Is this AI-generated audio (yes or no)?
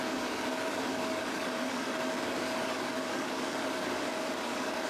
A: yes